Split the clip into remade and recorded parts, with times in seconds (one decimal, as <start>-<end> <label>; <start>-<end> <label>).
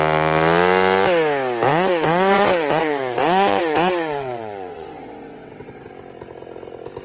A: 0.0-1.7 recorded; 1.7-5.9 remade; 5.9-7.0 recorded